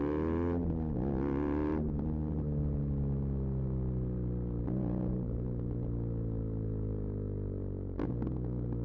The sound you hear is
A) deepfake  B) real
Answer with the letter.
B